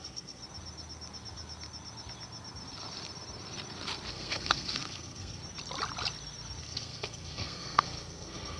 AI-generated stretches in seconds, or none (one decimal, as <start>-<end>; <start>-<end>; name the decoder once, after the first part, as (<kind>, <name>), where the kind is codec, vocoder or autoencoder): 0.0-0.4 (codec, SNAC); 4.1-5.4; 6.6-8.6